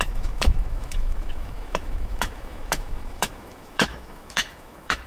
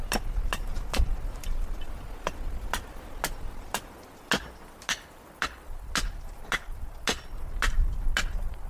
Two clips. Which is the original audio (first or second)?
second